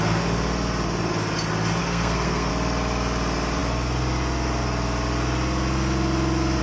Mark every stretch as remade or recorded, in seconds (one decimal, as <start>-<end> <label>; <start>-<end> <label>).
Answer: 0.0-1.8 recorded; 1.8-2.5 remade; 2.5-6.6 recorded